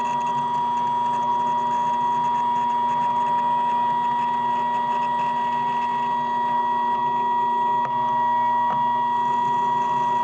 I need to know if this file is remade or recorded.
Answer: recorded